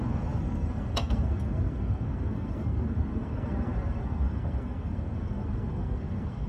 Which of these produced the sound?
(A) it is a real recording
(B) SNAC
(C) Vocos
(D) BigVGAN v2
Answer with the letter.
B